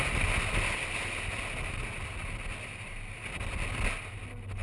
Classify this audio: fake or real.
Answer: real